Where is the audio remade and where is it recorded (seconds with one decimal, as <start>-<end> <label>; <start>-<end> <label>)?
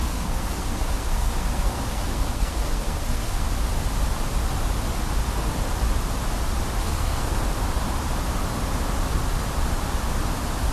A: 0.0-3.5 remade; 3.5-6.8 recorded; 6.8-7.4 remade; 7.4-10.7 recorded